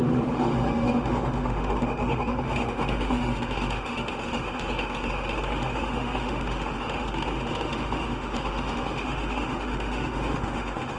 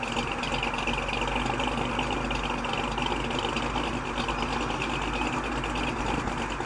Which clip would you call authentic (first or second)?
second